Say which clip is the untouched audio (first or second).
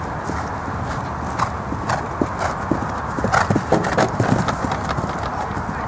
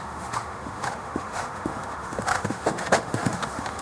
first